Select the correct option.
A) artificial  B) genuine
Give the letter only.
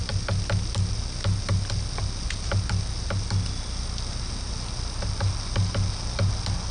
B